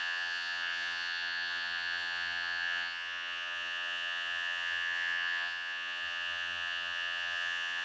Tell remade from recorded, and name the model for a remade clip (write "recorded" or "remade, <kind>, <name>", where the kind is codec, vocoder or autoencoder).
remade, vocoder, Vocos